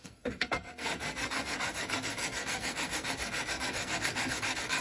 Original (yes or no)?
no